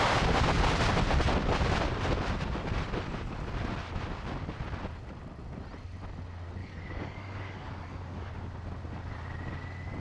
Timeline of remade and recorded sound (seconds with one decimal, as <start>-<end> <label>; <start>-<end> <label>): 0.0-6.6 recorded; 6.6-8.3 remade; 8.3-10.0 recorded